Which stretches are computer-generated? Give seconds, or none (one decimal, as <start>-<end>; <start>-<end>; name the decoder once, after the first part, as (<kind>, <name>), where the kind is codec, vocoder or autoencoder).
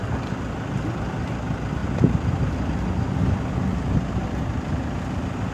none